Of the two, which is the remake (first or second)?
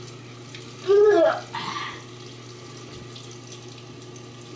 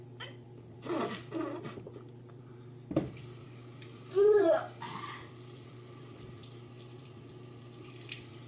second